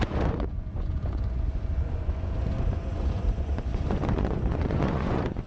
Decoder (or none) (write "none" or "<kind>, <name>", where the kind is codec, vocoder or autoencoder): vocoder, Vocos